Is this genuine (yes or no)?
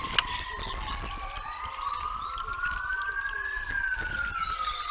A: yes